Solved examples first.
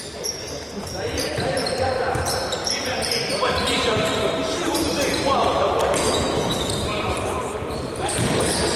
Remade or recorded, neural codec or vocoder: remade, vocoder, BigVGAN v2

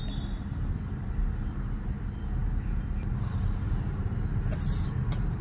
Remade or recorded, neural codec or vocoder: recorded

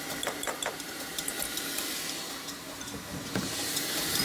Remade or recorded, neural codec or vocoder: remade, vocoder, BigVGAN v2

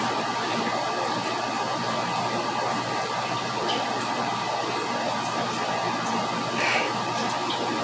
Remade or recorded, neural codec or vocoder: recorded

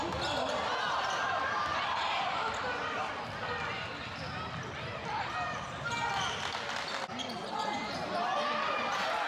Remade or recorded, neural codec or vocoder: recorded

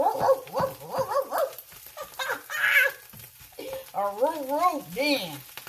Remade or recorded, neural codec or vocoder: recorded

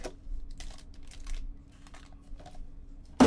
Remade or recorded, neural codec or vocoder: recorded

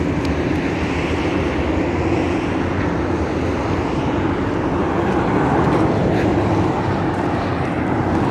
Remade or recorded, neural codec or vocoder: recorded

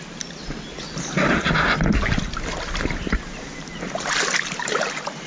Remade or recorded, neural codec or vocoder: recorded